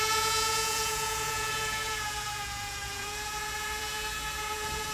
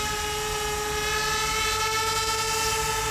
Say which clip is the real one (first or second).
second